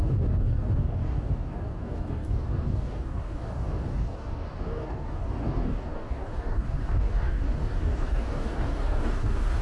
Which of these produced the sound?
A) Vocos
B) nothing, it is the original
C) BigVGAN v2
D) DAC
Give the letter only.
D